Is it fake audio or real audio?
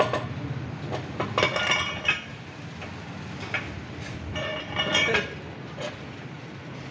real